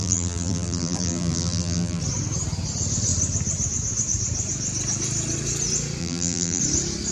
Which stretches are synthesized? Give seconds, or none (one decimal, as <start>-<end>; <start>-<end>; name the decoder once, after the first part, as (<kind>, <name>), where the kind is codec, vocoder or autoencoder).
0.0-2.0 (vocoder, BigVGAN v2); 6.0-6.6